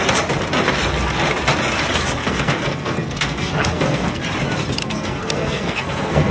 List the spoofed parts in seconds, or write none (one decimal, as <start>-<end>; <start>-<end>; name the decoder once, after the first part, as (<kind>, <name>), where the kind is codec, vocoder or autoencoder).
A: 2.2-4.2 (codec, SNAC); 4.8-6.3